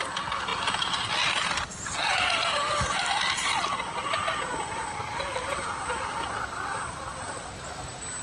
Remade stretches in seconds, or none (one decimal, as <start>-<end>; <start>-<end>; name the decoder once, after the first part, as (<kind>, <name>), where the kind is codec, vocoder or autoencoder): none